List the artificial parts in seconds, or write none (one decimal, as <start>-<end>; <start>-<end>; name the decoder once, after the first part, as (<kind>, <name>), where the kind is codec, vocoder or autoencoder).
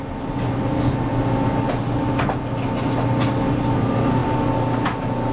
none